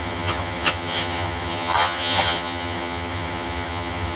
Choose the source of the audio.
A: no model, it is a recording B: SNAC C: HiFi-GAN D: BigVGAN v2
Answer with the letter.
C